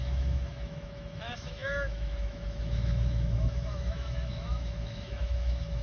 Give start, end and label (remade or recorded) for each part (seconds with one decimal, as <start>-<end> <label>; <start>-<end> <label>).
0.0-5.8 remade